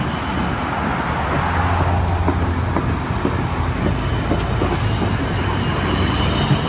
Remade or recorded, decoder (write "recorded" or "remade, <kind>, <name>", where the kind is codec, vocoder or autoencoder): recorded